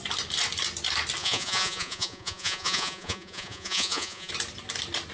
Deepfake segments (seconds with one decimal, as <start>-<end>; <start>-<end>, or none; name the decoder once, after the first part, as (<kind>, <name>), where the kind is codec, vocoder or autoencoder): 1.2-4.3 (vocoder, Vocos)